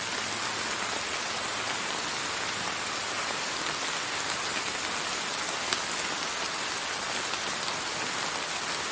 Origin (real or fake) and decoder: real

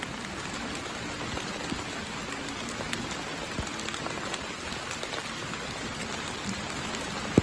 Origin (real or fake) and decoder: real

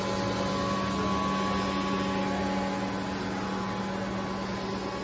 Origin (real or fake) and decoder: real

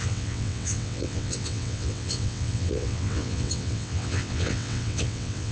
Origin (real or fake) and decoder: fake, vocoder, WaveNeXt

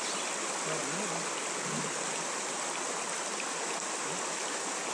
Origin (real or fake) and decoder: real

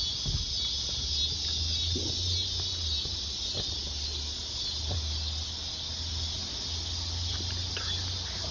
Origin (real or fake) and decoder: real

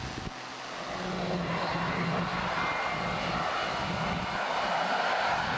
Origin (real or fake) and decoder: real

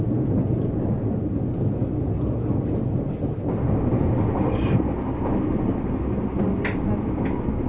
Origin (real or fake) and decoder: real